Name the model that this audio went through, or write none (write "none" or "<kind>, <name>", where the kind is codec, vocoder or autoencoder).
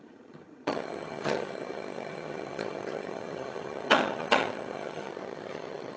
vocoder, HiFi-GAN